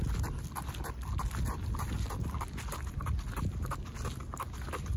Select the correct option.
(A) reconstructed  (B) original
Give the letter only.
B